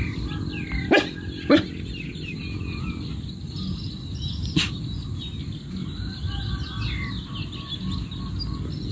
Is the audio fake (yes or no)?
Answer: no